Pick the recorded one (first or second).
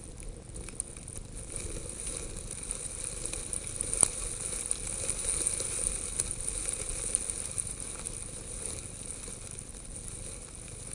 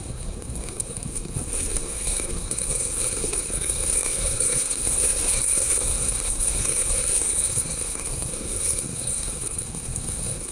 first